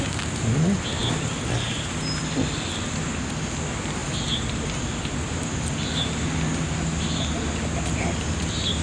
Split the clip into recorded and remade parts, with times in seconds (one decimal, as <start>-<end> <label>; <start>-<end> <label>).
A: 0.0-8.8 recorded